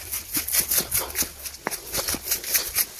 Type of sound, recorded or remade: recorded